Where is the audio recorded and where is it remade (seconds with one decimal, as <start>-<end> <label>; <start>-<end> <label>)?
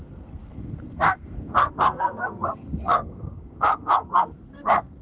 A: 0.0-5.0 remade